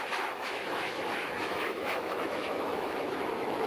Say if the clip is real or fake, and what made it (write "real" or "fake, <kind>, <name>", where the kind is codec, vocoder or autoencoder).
fake, autoencoder, DAC-VAE